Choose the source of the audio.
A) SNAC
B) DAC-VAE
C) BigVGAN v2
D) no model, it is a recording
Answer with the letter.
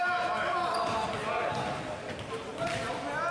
D